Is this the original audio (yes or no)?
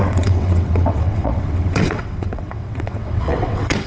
no